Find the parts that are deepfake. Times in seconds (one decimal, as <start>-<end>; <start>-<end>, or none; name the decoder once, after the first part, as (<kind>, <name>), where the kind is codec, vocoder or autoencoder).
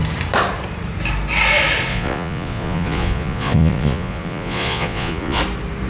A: 1.9-5.4 (vocoder, Vocos)